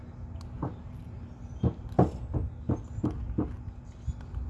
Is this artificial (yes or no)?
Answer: no